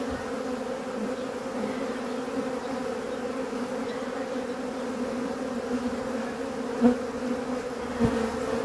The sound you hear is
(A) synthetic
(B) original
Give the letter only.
B